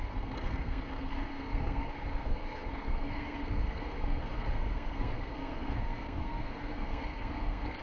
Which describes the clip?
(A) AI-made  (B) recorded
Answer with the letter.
A